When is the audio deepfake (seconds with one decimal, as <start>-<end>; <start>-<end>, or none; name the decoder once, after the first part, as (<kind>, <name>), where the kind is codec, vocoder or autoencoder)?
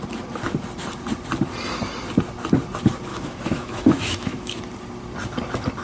3.1-4.6 (autoencoder, DAC-VAE)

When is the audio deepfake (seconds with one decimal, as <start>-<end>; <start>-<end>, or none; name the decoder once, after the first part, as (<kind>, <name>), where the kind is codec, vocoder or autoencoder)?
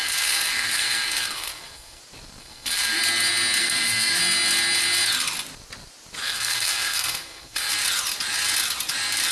0.0-2.0 (codec, SNAC); 2.4-3.0; 3.6-4.2; 6.2-7.7